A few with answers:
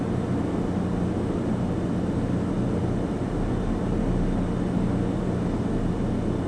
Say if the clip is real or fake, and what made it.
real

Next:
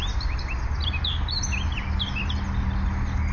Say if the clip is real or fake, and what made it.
real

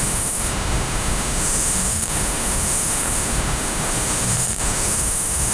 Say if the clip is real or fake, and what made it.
fake, autoencoder, DAC-VAE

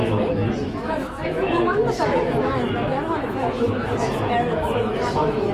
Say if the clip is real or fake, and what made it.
fake, autoencoder, DAC-VAE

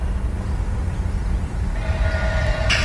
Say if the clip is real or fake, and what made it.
real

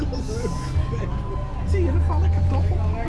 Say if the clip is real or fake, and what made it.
real